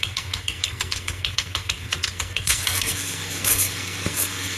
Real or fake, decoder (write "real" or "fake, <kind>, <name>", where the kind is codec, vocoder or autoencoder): fake, codec, SNAC